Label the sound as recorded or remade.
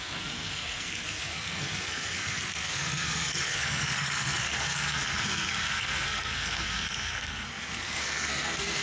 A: remade